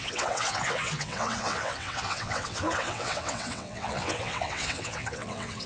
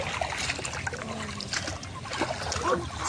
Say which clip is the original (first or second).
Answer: second